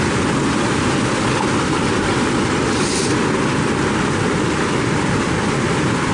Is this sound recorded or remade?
recorded